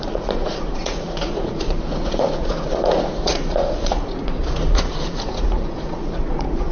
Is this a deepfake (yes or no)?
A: yes